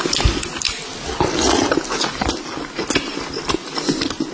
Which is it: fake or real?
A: real